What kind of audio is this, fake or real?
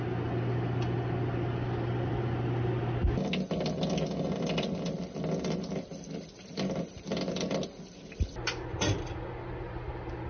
real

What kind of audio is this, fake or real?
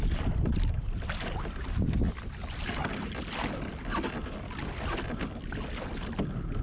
real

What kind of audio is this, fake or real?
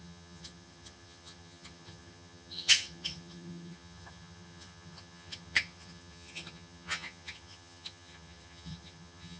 fake